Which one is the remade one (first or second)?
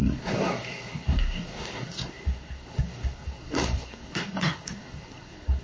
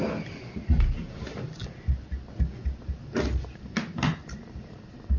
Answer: first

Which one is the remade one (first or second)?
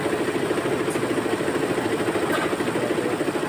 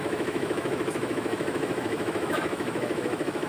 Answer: second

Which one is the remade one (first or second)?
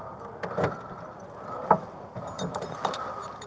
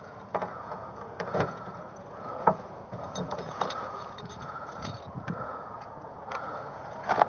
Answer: second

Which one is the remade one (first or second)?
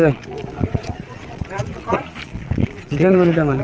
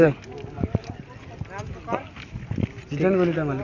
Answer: first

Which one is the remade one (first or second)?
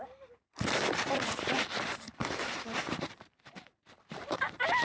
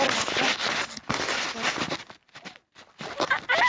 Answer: first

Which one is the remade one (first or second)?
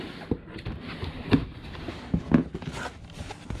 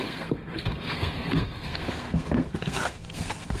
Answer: second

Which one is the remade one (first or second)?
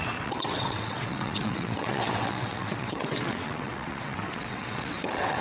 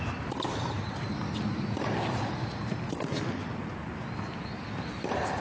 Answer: first